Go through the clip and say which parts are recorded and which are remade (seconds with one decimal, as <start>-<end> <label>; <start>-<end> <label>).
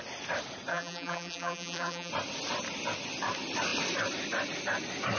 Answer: 0.0-0.7 recorded; 0.7-2.1 remade; 2.1-5.2 recorded